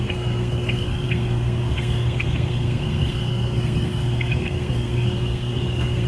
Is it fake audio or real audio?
fake